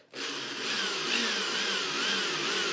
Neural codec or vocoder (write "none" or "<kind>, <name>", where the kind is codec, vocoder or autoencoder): none